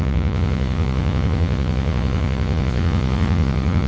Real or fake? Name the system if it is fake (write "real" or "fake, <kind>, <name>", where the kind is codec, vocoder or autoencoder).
fake, vocoder, Vocos